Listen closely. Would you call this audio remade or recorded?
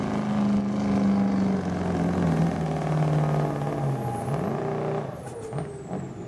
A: recorded